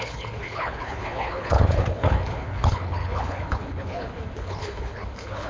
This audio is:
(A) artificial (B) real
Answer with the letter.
A